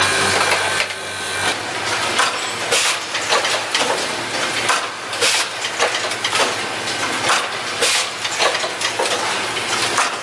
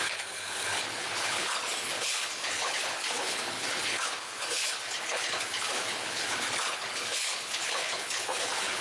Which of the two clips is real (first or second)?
first